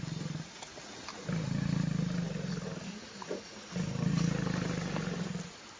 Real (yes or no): yes